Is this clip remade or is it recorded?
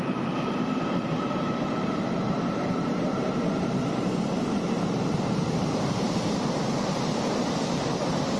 remade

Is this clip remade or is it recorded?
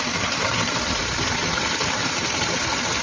remade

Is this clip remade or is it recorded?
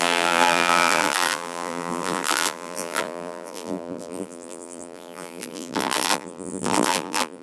remade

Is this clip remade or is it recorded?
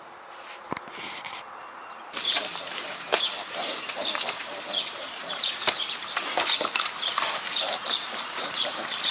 remade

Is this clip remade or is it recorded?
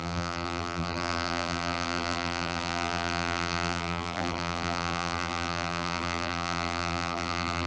remade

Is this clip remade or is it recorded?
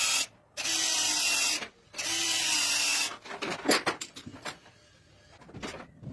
recorded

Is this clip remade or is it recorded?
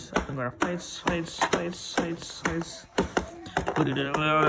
remade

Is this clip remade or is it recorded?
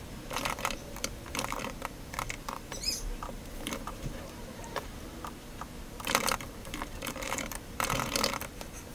remade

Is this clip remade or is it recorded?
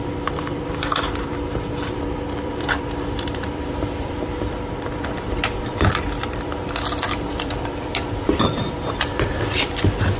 remade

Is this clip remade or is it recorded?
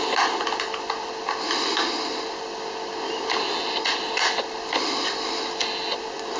recorded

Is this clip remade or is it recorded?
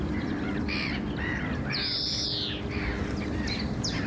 remade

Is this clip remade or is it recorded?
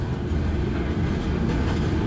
recorded